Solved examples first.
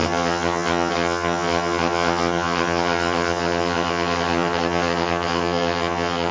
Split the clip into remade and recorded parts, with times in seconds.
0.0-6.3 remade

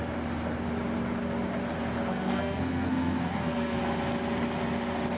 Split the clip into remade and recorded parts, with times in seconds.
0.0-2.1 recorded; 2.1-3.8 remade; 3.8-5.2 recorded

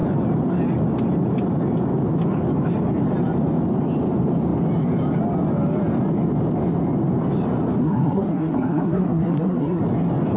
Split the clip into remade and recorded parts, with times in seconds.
0.0-7.8 recorded; 7.8-9.8 remade; 9.8-10.4 recorded

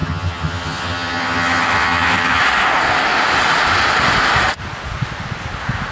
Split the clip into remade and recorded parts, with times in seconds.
0.0-2.4 remade; 2.4-5.9 recorded